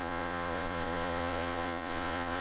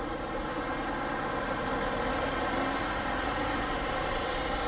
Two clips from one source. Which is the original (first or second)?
second